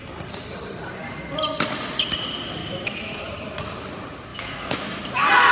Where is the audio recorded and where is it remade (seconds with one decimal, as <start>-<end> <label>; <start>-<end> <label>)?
0.0-2.6 recorded; 2.6-3.2 remade; 3.2-4.3 recorded; 4.3-5.0 remade; 5.0-5.5 recorded